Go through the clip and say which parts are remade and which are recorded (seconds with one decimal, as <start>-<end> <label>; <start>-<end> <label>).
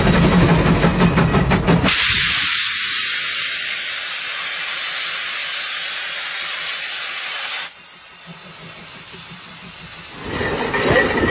0.0-11.3 recorded